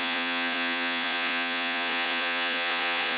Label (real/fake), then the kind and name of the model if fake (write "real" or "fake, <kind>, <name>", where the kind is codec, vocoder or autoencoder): fake, vocoder, Vocos